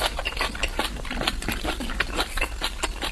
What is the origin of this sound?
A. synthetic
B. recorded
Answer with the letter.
B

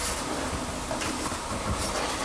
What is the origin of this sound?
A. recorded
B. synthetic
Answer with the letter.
A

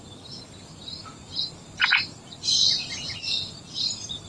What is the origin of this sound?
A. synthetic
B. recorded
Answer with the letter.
B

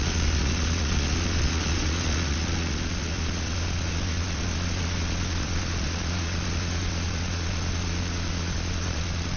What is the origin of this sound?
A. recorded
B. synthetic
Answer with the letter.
B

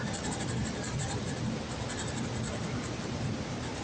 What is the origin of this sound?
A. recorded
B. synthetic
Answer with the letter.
A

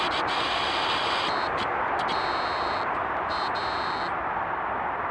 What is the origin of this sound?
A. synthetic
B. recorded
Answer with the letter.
B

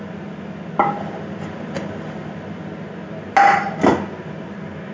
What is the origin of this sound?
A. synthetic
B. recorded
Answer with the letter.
B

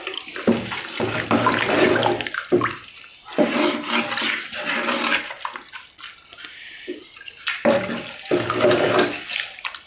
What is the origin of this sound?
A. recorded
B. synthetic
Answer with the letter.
A